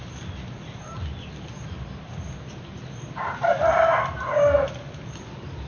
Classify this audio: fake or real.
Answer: real